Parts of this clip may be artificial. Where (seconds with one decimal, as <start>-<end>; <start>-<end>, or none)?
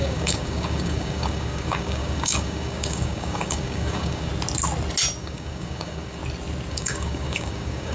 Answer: 0.0-4.3; 5.2-6.2; 6.7-7.9